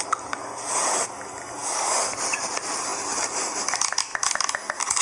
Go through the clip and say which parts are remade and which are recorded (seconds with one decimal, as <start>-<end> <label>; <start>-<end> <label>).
0.0-1.6 recorded; 1.6-2.2 remade; 2.2-5.0 recorded